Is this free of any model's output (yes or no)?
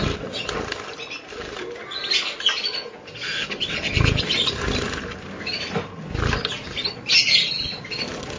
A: yes